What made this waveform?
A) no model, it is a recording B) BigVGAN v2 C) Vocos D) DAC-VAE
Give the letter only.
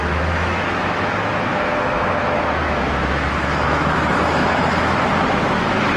D